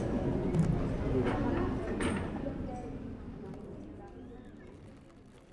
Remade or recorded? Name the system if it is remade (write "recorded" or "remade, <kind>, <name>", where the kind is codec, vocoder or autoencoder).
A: recorded